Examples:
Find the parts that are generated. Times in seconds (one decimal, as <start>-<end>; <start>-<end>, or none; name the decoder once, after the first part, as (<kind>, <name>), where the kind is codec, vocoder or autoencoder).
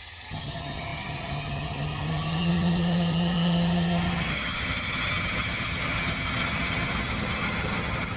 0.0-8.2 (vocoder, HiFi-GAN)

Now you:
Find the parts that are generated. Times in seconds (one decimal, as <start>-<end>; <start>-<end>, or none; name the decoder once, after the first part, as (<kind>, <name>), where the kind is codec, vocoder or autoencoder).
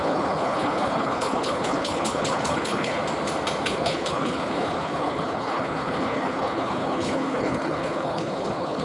0.0-3.0 (codec, HILCodec); 3.6-8.8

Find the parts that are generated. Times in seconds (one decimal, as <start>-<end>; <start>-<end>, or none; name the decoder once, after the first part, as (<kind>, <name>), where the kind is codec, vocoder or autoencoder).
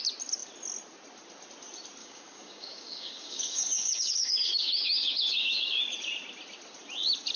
2.0-5.8 (codec, DAC)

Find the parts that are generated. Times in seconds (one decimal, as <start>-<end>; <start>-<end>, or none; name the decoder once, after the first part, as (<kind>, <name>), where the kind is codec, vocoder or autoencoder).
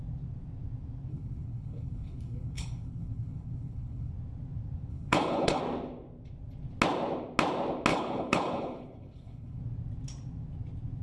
1.1-4.1 (codec, HILCodec); 4.9-5.6; 7.9-9.6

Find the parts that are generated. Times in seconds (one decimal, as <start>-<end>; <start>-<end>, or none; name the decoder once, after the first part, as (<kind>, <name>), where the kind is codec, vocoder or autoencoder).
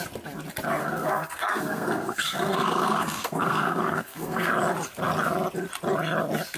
0.8-4.5 (codec, SNAC)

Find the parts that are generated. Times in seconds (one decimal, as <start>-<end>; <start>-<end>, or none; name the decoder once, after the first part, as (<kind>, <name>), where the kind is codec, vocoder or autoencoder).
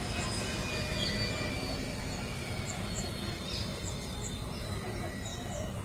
2.4-2.9 (vocoder, BigVGAN v2); 3.7-4.9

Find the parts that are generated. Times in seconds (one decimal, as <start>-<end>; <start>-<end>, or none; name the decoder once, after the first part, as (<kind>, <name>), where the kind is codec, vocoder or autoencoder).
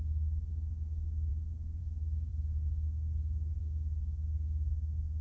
0.0-2.3 (autoencoder, DAC-VAE); 3.6-5.2